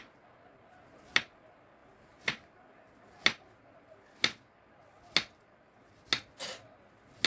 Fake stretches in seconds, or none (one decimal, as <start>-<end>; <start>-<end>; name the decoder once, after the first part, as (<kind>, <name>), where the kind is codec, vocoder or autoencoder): none